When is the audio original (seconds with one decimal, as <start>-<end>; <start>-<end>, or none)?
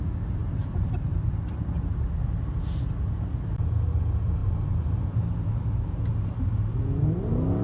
0.0-0.4; 1.8-4.4; 6.4-7.6